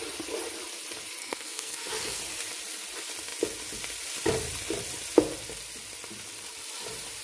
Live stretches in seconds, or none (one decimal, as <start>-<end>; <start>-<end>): 0.0-1.2; 2.2-7.2